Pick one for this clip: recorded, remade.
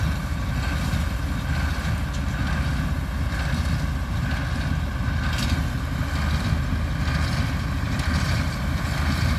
recorded